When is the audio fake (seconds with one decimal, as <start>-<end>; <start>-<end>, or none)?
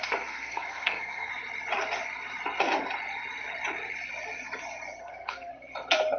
0.0-1.3; 5.0-5.5